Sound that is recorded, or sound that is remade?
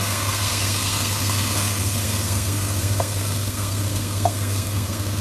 remade